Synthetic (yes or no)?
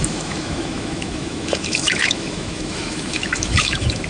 yes